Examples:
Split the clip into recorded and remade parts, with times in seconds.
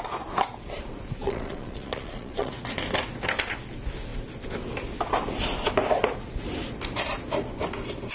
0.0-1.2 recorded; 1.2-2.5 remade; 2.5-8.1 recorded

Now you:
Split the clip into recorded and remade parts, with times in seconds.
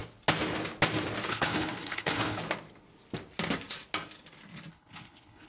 0.0-1.3 recorded; 1.3-2.4 remade; 2.4-4.7 recorded; 4.7-5.5 remade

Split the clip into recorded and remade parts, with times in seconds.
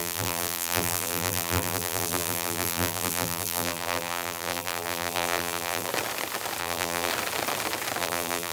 0.0-5.9 remade; 5.9-6.6 recorded; 6.6-7.1 remade; 7.1-8.0 recorded; 8.0-8.5 remade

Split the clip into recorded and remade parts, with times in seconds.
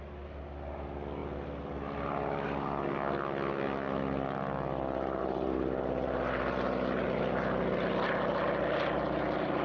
0.0-9.6 recorded